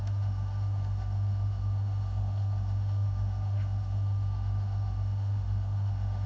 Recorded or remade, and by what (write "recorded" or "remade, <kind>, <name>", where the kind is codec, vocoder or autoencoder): remade, autoencoder, DAC-VAE